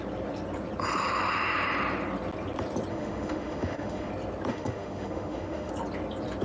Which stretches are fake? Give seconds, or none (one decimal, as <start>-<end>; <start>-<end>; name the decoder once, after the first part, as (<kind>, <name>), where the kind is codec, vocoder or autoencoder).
2.9-4.1 (autoencoder, DAC-VAE); 4.5-5.7